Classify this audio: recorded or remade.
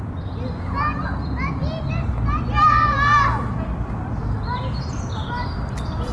recorded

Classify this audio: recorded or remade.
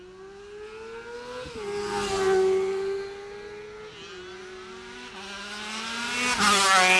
recorded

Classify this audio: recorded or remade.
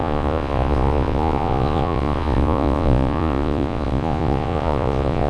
remade